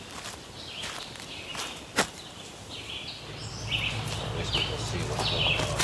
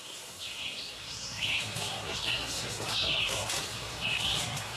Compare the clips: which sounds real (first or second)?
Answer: first